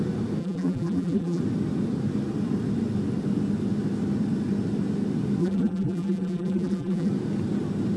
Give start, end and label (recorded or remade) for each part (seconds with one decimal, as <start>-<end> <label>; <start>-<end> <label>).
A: 0.0-0.4 recorded; 0.4-1.4 remade; 1.4-5.4 recorded; 5.4-7.1 remade; 7.1-8.0 recorded